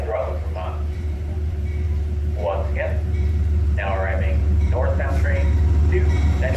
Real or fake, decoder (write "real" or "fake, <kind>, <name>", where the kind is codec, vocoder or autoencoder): fake, vocoder, BigVGAN v2